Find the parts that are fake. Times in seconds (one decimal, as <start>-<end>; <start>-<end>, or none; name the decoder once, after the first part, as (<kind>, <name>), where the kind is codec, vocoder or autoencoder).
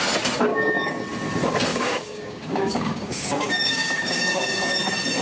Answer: 0.5-1.0 (codec, DAC); 1.7-4.8